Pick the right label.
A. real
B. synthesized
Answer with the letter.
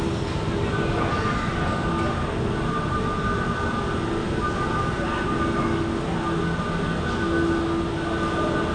A